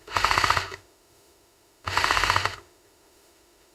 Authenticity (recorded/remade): remade